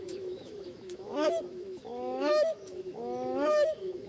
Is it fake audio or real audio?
fake